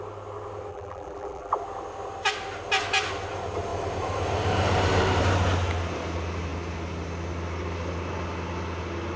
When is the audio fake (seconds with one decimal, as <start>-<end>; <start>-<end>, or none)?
0.7-1.5